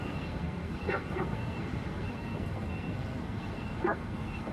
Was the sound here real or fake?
fake